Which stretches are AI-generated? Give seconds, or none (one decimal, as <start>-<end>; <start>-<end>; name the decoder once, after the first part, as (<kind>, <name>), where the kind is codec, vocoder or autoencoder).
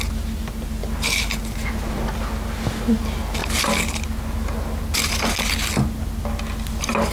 none